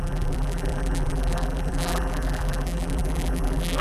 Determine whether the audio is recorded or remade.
remade